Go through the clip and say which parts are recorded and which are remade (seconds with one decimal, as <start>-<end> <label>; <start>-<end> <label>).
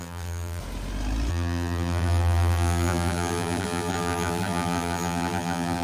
0.0-0.6 remade; 0.6-1.3 recorded; 1.3-5.8 remade